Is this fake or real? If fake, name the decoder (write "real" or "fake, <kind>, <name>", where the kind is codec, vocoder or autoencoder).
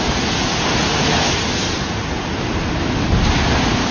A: real